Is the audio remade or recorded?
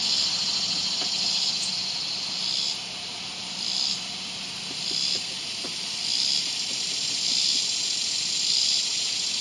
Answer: recorded